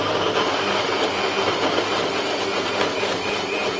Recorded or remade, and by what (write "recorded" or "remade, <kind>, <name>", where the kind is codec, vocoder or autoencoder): recorded